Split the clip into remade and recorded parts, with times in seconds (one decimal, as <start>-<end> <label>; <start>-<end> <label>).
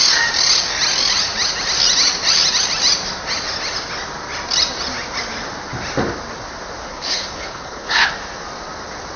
0.0-6.8 recorded; 6.8-8.1 remade; 8.1-9.2 recorded